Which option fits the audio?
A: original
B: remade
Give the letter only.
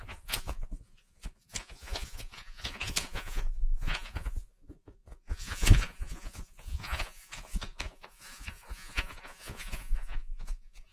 B